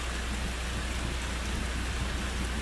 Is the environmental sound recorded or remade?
recorded